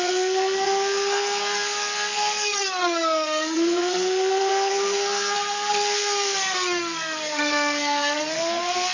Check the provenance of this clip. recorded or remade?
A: remade